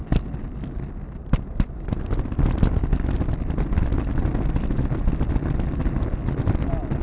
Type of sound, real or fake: real